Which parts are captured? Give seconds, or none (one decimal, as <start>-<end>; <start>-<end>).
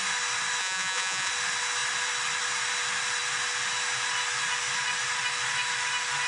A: 0.0-0.6; 1.3-6.3